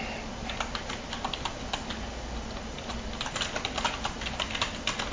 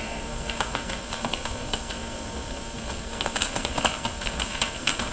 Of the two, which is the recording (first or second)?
first